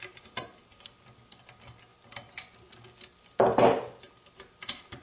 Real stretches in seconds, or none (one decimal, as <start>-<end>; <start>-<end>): 0.0-5.0